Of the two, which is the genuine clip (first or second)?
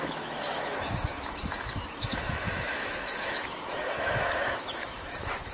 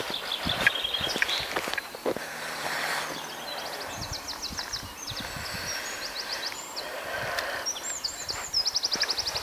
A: second